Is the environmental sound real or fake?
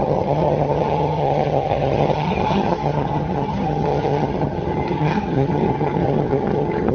fake